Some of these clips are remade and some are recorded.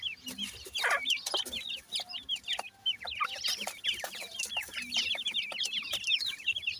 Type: recorded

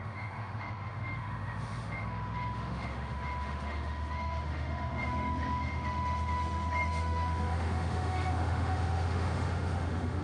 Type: remade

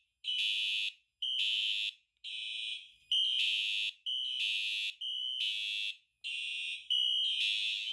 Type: recorded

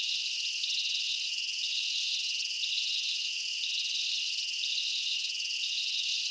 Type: remade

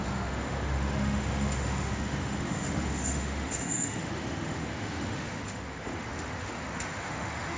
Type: remade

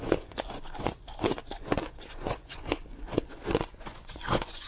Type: remade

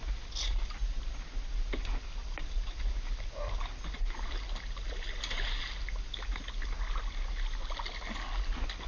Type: recorded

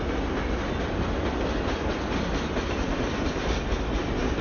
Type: recorded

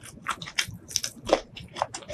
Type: remade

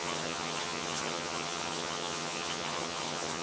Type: remade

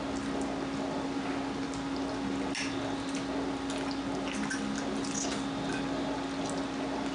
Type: recorded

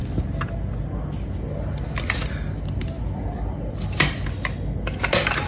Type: recorded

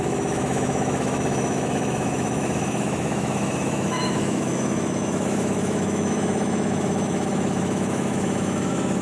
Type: remade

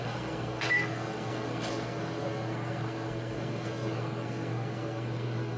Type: remade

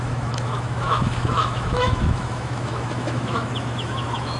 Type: remade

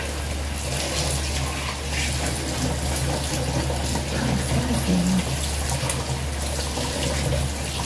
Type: recorded